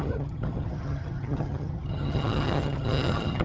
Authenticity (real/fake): fake